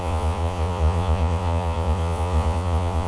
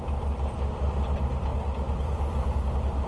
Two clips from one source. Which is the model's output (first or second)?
first